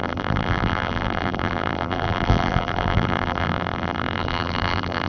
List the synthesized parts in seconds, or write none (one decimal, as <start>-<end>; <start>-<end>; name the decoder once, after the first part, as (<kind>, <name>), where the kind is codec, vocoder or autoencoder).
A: 0.0-5.1 (vocoder, BigVGAN v2)